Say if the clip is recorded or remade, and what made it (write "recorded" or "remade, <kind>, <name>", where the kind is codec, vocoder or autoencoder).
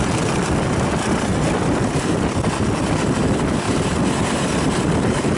remade, vocoder, BigVGAN v2